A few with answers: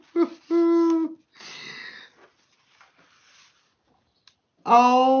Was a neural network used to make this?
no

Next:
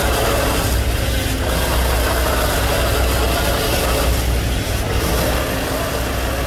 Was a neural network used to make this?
no